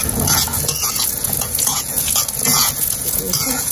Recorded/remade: remade